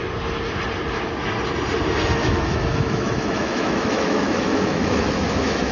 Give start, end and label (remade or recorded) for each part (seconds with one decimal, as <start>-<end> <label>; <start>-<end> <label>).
0.0-2.2 recorded; 2.2-5.7 remade